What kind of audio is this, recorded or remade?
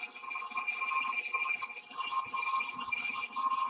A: recorded